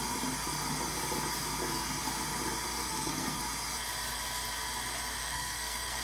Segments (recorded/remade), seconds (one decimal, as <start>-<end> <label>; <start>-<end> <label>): 0.0-2.8 recorded; 2.8-3.4 remade; 3.4-5.2 recorded; 5.2-6.0 remade

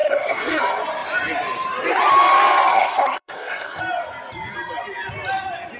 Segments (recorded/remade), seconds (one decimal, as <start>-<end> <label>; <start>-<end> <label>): 0.0-0.6 remade; 0.6-2.7 recorded; 2.7-3.8 remade; 3.8-5.8 recorded

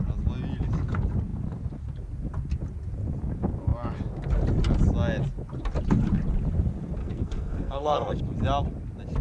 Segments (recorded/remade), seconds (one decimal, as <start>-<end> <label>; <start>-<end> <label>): 0.0-7.0 recorded; 7.0-8.2 remade; 8.2-9.2 recorded

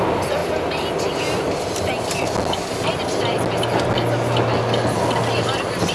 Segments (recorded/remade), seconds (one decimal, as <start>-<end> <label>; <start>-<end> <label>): 0.0-5.9 recorded

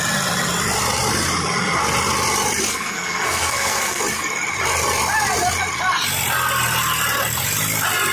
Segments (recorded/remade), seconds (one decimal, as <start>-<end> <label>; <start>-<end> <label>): 0.0-2.7 recorded; 2.7-4.0 remade; 4.0-8.1 recorded